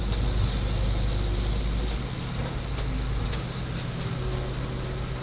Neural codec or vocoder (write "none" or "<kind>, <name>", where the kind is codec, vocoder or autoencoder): none